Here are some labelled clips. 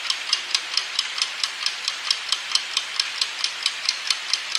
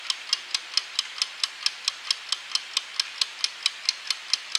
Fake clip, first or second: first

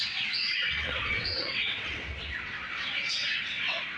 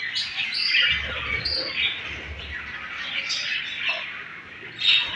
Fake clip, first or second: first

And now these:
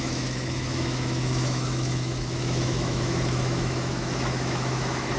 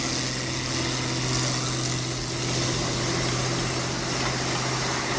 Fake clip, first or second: first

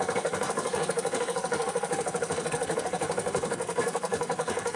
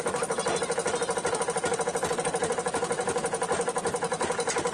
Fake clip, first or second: first